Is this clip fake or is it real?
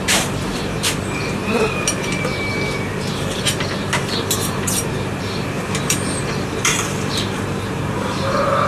fake